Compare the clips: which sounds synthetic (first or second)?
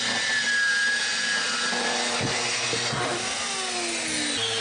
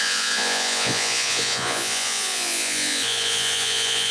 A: second